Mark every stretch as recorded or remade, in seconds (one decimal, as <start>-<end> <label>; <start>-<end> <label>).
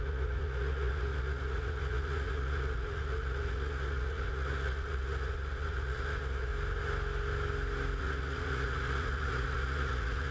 0.0-6.5 remade; 6.5-8.0 recorded; 8.0-10.3 remade